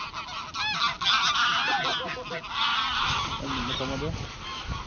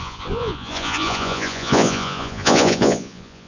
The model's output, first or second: second